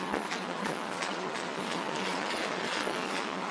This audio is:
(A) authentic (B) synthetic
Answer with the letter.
B